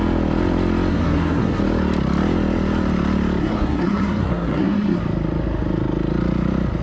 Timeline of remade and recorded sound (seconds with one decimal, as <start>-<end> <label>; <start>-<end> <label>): 0.0-0.9 recorded; 0.9-1.6 remade; 1.6-3.4 recorded; 3.4-5.0 remade; 5.0-6.8 recorded